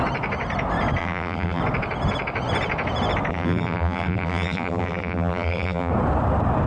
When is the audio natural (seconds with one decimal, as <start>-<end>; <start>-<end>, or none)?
0.0-1.0; 1.6-3.3; 5.9-6.7